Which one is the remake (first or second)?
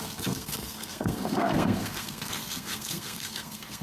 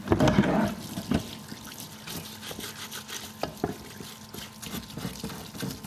first